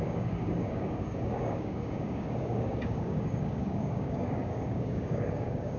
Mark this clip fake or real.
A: fake